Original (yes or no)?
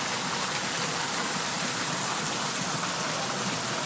yes